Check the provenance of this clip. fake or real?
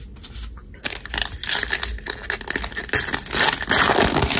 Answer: real